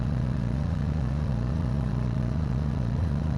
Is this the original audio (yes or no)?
no